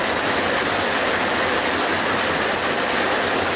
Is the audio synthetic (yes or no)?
no